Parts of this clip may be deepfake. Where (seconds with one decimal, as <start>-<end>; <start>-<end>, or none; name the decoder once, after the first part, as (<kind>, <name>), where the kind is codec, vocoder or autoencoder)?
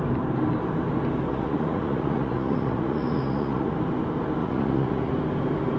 1.3-3.7 (vocoder, Vocos); 4.4-5.1